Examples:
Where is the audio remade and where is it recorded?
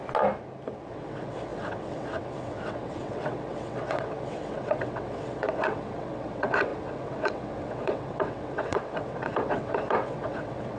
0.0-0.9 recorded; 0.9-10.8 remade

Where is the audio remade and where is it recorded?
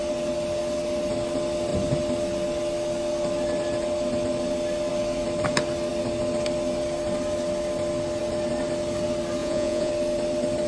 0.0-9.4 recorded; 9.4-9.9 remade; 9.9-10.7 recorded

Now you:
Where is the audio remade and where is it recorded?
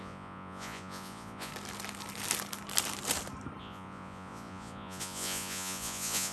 0.0-1.5 remade; 1.5-3.6 recorded; 3.6-6.3 remade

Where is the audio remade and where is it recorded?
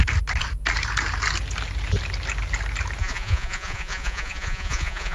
0.0-3.0 recorded; 3.0-5.1 remade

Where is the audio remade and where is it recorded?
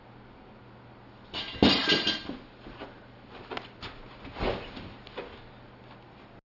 0.0-6.6 recorded